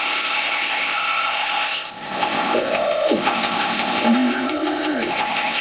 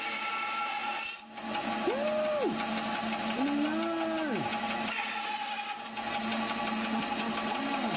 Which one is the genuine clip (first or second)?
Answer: second